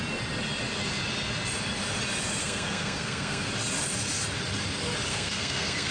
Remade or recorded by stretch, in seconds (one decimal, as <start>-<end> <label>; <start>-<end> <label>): 0.0-2.4 recorded; 2.4-3.5 remade; 3.5-5.1 recorded; 5.1-5.9 remade